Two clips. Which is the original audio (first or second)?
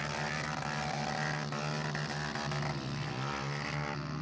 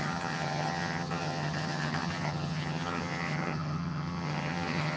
first